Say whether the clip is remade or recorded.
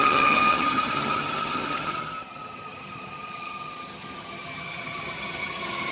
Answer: remade